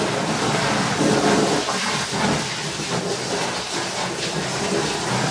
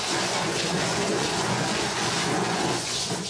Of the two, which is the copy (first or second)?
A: second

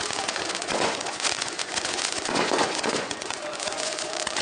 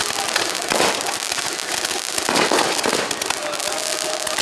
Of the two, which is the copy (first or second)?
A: first